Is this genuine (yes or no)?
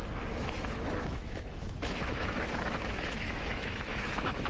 no